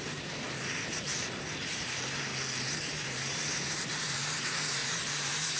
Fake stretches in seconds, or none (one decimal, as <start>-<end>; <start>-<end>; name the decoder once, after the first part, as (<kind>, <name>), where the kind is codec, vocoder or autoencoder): 0.0-2.3 (vocoder, BigVGAN v2); 2.8-5.6